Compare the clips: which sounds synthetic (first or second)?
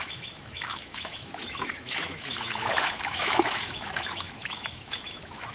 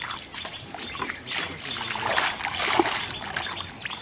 first